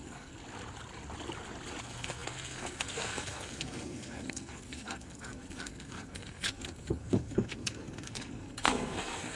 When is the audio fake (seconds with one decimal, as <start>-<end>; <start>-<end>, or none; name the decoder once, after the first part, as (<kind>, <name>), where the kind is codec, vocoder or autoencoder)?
0.0-0.4 (codec, SNAC); 1.8-9.4